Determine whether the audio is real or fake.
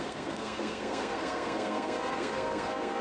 fake